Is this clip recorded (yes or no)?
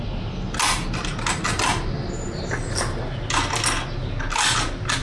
yes